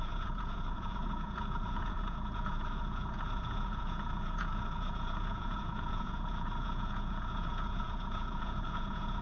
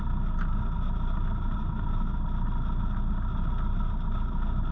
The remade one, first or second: first